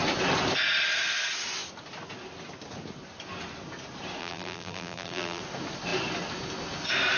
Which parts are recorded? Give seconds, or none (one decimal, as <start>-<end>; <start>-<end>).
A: 0.0-4.2; 5.4-7.2